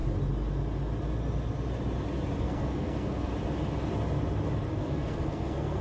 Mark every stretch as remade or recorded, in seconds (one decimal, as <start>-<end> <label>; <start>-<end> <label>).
0.0-2.4 recorded; 2.4-3.3 remade; 3.3-4.7 recorded; 4.7-5.8 remade